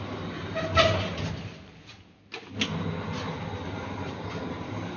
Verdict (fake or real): real